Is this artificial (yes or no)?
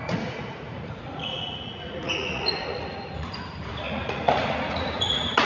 yes